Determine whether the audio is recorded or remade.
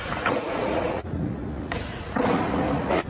remade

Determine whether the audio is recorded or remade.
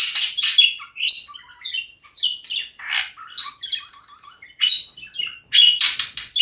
recorded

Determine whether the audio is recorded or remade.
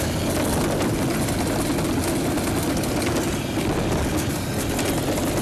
recorded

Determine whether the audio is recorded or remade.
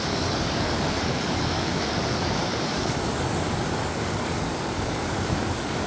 remade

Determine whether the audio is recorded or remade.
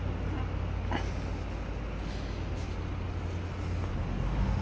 recorded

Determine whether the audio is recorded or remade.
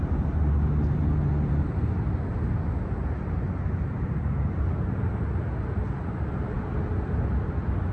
recorded